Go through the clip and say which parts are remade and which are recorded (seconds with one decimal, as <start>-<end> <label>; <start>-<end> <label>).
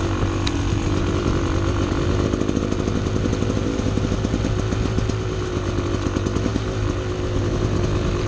0.0-8.3 recorded